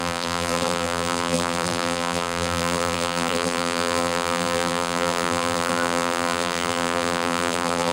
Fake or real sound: fake